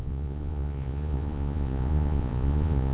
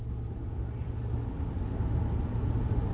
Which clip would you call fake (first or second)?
first